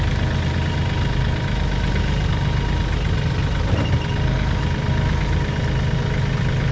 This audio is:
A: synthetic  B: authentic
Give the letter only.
B